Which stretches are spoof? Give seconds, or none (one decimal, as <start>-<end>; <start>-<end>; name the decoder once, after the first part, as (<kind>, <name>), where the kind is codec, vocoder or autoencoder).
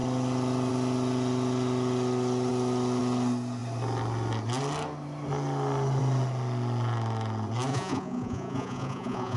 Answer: 7.7-9.4 (vocoder, Vocos)